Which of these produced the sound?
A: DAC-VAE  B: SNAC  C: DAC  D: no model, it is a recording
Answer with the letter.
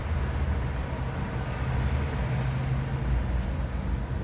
D